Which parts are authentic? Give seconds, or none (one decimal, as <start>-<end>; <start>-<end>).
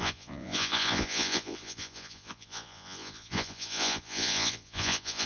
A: none